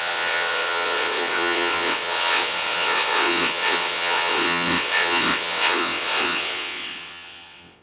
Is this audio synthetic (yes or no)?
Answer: yes